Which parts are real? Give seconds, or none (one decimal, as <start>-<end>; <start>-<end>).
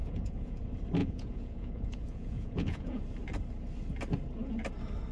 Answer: 0.6-1.0; 3.0-5.1